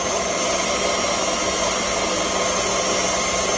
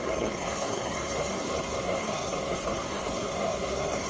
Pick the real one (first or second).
first